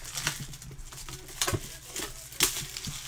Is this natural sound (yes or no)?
yes